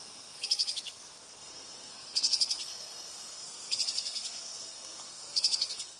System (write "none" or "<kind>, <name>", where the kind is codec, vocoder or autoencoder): codec, SNAC